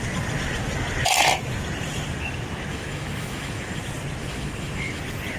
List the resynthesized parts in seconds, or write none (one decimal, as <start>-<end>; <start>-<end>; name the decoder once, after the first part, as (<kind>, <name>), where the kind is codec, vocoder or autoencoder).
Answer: 2.7-3.8 (autoencoder, DAC-VAE); 4.2-5.0